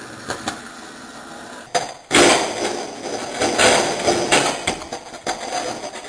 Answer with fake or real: real